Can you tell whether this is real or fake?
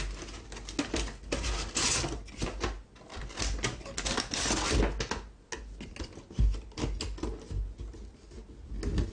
real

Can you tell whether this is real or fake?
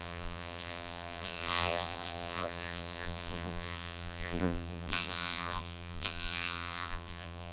fake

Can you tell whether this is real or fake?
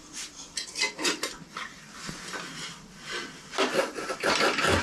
real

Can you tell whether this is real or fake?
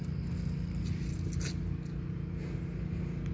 real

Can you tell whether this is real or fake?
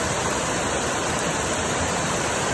fake